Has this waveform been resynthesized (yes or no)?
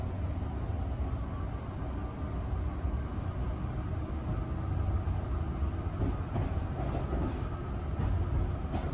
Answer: no